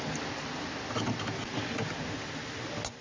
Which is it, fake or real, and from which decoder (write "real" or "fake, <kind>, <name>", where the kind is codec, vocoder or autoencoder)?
real